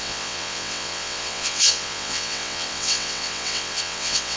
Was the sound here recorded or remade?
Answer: remade